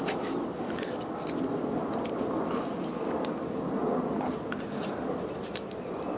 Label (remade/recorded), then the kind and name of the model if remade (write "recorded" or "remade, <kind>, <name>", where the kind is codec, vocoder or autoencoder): remade, vocoder, BigVGAN v2